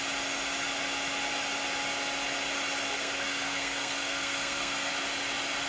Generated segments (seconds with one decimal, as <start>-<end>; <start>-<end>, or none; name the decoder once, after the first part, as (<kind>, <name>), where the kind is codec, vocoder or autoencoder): 2.9-4.9 (codec, SNAC)